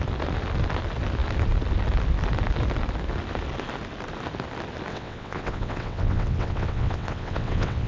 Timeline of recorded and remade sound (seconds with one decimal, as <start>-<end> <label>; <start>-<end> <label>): 0.0-4.9 recorded; 4.9-7.9 remade